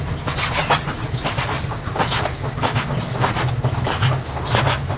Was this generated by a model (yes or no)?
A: no